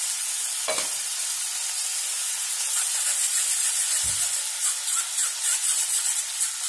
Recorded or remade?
recorded